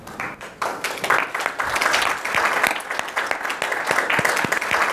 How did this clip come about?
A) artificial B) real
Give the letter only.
B